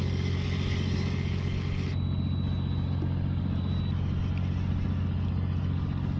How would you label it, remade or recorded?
recorded